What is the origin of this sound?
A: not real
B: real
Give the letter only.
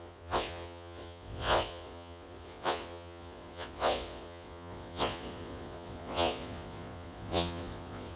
A